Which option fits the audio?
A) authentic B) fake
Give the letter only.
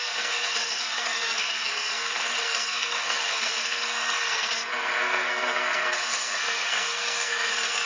B